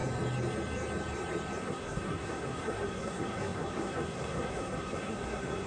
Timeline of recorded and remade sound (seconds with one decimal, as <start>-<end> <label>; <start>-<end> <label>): 0.0-1.6 recorded; 1.6-5.7 remade